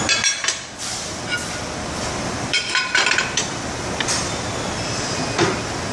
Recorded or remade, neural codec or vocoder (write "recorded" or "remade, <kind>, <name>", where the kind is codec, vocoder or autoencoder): remade, vocoder, BigVGAN v2